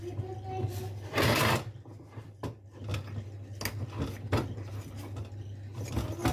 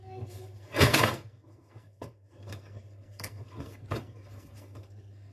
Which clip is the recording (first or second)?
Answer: first